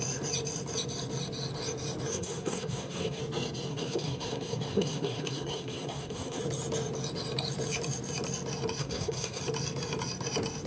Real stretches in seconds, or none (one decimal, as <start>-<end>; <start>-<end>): 0.0-2.1; 3.2-3.7; 6.4-8.8; 9.4-10.7